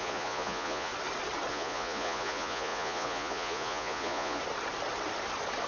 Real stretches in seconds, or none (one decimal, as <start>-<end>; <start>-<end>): 0.9-1.5; 4.4-5.7

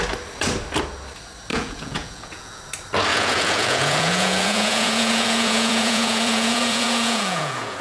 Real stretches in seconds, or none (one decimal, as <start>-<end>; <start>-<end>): 0.0-1.5; 2.6-3.1

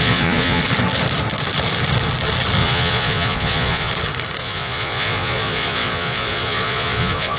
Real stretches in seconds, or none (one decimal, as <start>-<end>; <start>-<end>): 0.6-2.6; 3.9-4.4

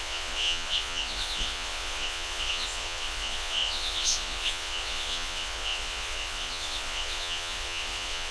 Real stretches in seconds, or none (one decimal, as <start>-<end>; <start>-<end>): none